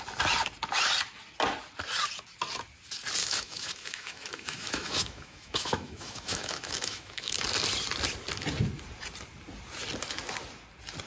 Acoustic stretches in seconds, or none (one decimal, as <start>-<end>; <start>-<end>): 0.0-3.2; 7.3-11.1